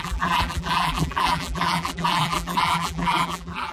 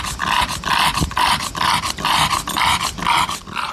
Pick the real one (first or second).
second